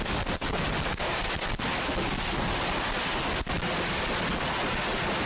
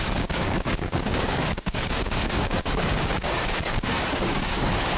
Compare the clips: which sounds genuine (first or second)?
first